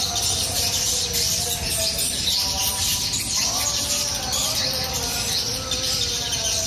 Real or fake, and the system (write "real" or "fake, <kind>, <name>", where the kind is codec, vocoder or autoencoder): real